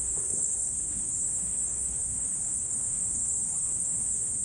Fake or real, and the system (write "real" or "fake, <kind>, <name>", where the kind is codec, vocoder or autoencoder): fake, codec, HILCodec